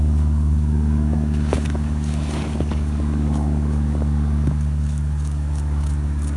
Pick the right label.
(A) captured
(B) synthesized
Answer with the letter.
B